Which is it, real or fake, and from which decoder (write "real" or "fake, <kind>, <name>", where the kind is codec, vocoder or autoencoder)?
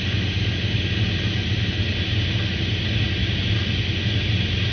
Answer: real